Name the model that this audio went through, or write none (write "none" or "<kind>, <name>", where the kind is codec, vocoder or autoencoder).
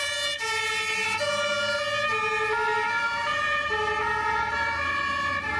none